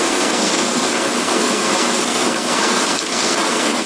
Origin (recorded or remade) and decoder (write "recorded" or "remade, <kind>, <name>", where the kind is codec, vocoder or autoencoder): remade, codec, SNAC